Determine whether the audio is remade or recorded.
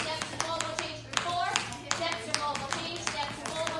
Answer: recorded